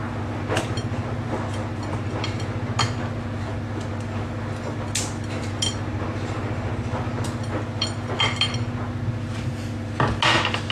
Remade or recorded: recorded